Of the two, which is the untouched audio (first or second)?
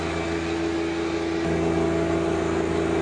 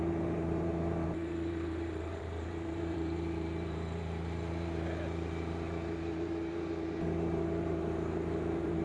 first